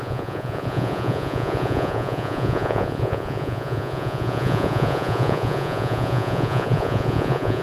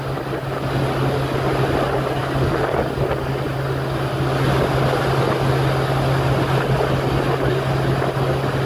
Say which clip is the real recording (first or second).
second